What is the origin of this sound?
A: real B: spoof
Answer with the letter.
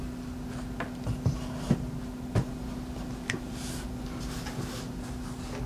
A